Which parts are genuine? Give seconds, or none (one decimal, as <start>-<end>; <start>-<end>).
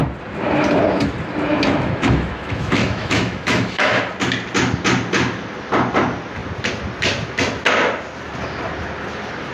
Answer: 0.0-1.5; 4.0-9.5